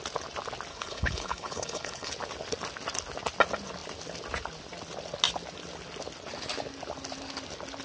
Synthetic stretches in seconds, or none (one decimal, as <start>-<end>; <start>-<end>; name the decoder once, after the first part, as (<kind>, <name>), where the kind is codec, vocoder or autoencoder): 0.7-2.1 (codec, HILCodec)